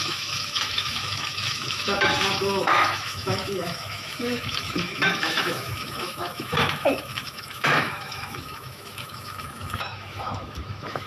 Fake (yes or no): yes